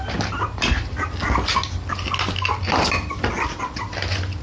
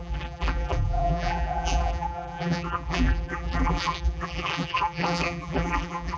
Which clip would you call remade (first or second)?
second